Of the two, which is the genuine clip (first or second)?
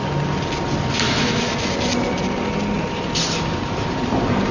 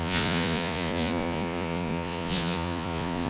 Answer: first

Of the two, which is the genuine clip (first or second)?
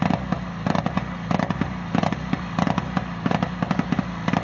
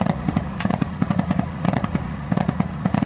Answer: first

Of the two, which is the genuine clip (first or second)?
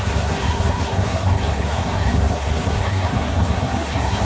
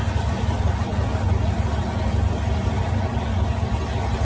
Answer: second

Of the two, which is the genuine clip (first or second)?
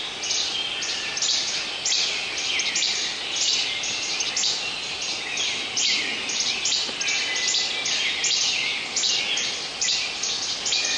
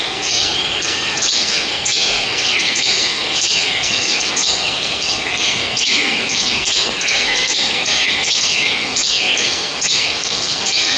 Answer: first